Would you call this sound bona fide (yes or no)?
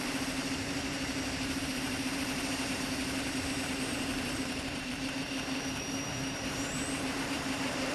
no